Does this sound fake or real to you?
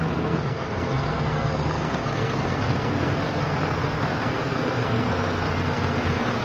fake